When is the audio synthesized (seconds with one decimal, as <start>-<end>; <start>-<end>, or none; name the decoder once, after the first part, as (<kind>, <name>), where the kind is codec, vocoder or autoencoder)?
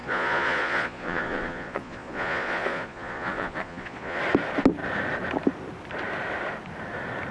0.0-4.2 (vocoder, Vocos)